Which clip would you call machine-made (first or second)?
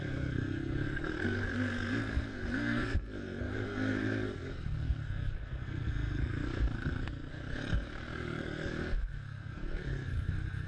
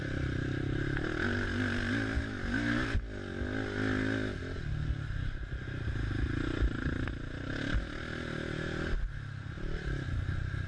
first